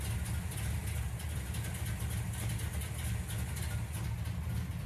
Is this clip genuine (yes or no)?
yes